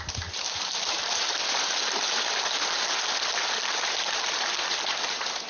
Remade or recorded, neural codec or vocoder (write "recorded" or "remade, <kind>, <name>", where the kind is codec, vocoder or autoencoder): recorded